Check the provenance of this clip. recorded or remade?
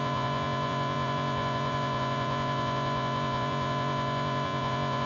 remade